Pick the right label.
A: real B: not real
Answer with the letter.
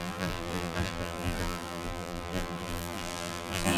B